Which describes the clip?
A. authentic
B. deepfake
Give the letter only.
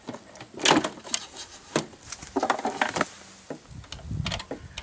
A